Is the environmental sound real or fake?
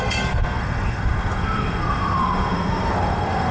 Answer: fake